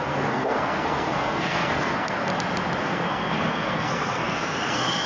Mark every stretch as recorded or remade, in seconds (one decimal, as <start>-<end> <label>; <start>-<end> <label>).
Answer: 0.0-2.3 remade; 2.3-2.8 recorded; 2.8-5.1 remade